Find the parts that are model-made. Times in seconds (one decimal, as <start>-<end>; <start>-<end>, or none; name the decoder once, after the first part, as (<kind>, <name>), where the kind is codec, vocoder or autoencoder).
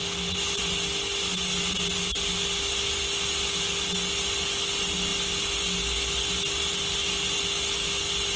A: none